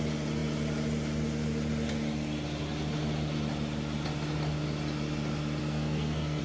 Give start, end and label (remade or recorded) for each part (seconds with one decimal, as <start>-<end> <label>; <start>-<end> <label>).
0.0-5.6 recorded; 5.6-6.4 remade